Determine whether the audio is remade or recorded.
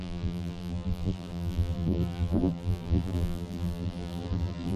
remade